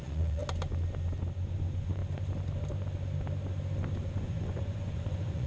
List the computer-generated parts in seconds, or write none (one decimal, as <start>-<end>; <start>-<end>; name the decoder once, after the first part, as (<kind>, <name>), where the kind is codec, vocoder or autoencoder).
0.0-0.4 (vocoder, Vocos); 1.3-2.0; 4.1-5.5

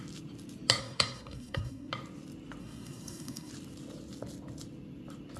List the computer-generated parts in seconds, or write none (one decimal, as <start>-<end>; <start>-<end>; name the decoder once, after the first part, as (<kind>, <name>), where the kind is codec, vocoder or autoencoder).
0.8-1.9 (codec, SNAC); 2.6-3.5